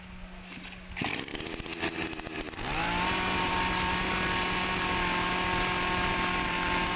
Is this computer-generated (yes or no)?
no